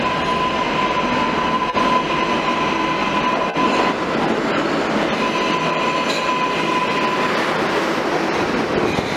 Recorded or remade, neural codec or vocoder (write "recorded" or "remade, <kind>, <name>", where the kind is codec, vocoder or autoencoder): recorded